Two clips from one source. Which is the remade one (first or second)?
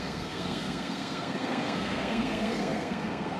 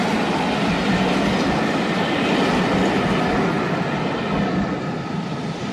first